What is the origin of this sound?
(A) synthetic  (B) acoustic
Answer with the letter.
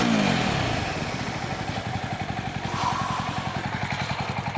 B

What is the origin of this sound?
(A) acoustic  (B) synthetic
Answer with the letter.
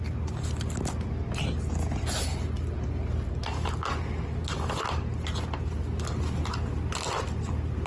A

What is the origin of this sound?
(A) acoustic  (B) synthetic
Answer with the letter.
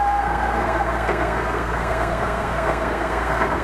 B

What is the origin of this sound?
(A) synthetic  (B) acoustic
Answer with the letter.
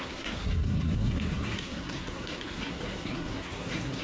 A